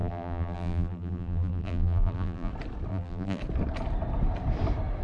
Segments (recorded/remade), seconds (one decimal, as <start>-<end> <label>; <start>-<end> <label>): 0.0-2.5 remade; 2.5-2.9 recorded; 2.9-3.4 remade; 3.4-5.0 recorded